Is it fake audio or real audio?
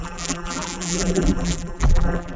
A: fake